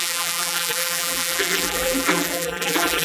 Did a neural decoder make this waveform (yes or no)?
yes